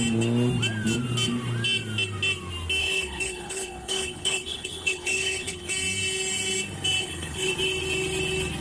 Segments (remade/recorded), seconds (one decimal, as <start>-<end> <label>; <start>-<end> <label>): 0.0-2.8 recorded; 2.8-5.7 remade; 5.7-7.0 recorded; 7.0-7.5 remade; 7.5-8.6 recorded